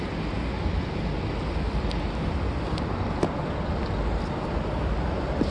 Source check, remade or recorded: recorded